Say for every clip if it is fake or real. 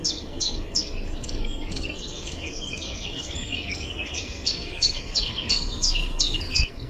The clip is fake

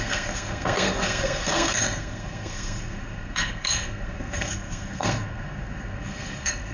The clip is fake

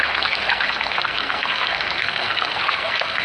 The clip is fake